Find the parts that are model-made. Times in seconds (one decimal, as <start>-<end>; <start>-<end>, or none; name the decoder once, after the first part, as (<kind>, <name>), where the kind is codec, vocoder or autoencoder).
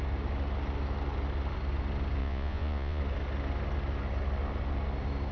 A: 2.2-3.0 (vocoder, Vocos)